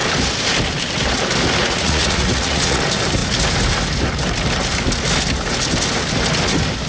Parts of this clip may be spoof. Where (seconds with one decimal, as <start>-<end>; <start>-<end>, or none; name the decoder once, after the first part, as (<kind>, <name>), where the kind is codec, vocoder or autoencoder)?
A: 1.6-2.8 (vocoder, Vocos)